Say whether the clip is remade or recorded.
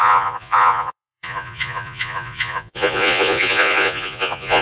remade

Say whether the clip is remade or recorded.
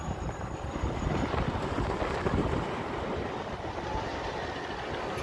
recorded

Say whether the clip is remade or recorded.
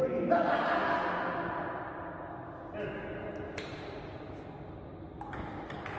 recorded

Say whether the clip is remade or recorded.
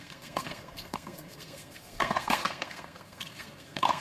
remade